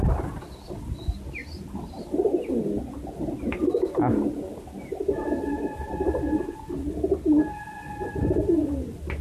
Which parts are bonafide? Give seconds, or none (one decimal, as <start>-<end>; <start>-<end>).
0.0-9.2